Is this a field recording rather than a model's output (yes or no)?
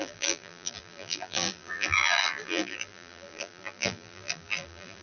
no